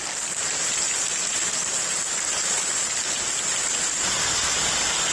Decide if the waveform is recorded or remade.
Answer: recorded